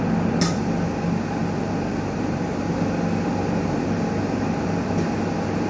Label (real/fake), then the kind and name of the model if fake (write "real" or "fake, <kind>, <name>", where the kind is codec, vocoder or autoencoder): real